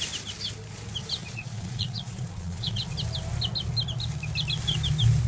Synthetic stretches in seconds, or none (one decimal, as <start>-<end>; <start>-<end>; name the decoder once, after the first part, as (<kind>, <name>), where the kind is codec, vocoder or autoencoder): 1.2-2.8 (vocoder, Vocos)